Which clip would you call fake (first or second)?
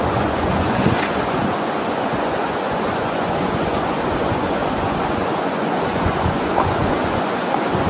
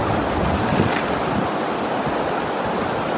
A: first